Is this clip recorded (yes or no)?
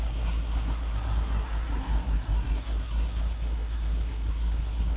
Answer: no